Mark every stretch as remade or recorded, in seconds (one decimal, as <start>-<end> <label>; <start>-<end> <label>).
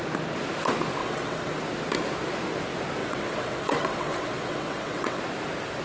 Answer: 0.0-1.0 recorded; 1.0-1.5 remade; 1.5-3.0 recorded; 3.0-5.2 remade; 5.2-5.8 recorded